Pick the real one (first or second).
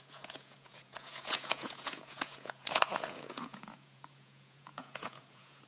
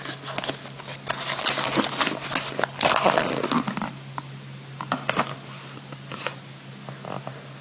second